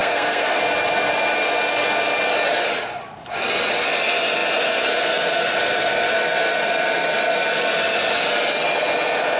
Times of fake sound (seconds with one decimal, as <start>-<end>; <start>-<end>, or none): 0.0-0.6